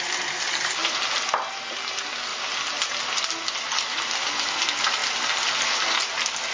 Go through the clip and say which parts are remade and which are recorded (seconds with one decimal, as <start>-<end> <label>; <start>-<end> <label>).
0.0-5.0 recorded; 5.0-6.0 remade; 6.0-6.5 recorded